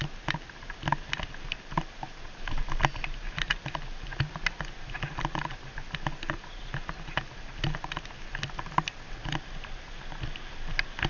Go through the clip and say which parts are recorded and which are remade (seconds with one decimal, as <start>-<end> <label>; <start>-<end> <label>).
0.0-11.1 recorded